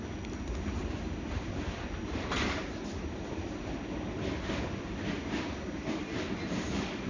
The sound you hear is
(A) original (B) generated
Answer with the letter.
A